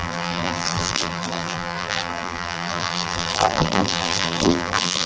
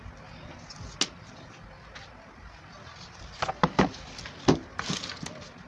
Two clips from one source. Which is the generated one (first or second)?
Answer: first